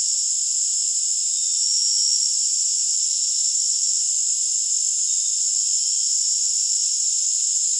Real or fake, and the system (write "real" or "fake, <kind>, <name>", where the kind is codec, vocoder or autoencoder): real